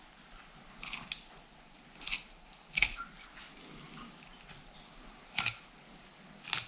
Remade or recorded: recorded